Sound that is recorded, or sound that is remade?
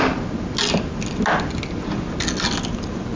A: recorded